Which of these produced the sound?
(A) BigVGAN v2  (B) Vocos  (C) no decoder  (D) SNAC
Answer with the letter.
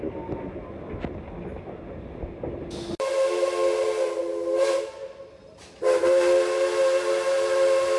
C